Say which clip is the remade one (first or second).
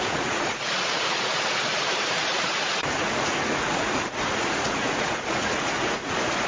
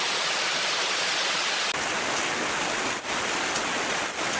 first